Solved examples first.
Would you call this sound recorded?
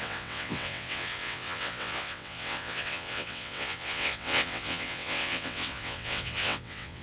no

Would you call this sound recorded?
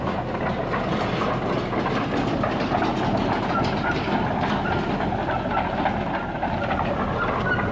yes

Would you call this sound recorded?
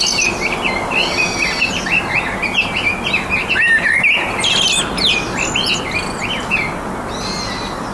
yes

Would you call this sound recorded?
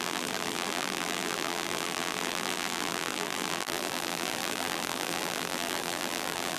no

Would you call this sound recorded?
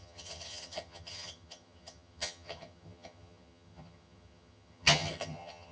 no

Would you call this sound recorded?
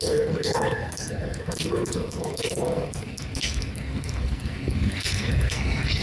no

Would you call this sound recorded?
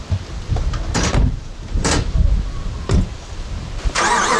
no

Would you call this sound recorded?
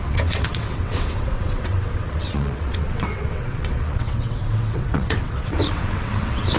no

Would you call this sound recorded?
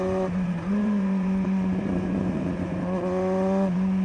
no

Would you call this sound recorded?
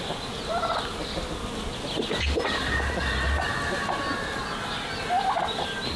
yes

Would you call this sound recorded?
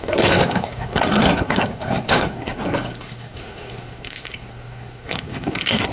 no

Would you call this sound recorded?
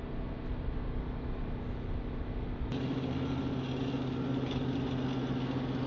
yes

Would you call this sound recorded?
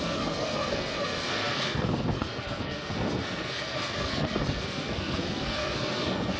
no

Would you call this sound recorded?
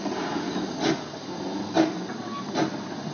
yes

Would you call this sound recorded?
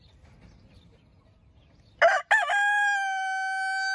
yes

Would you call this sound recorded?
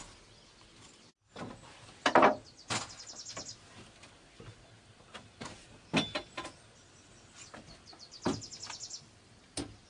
yes